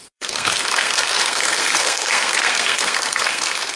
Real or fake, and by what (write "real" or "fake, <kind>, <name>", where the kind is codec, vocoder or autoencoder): fake, codec, SNAC